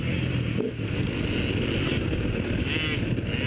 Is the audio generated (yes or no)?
no